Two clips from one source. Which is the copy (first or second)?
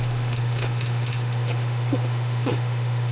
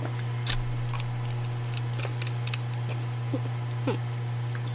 first